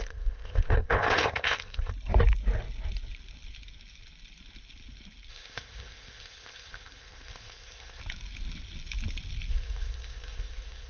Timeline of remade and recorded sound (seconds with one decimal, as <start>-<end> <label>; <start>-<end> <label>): 0.0-1.9 remade; 1.9-5.3 recorded; 5.3-8.0 remade; 8.0-9.5 recorded; 9.5-10.9 remade